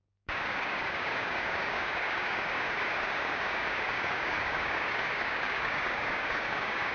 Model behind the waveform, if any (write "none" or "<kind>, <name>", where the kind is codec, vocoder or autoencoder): codec, DAC